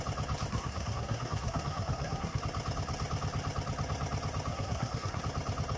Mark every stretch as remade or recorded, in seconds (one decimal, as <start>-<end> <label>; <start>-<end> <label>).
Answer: 0.0-0.5 recorded; 0.5-2.4 remade; 2.4-4.5 recorded; 4.5-5.2 remade; 5.2-5.8 recorded